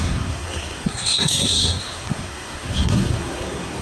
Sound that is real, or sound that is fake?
fake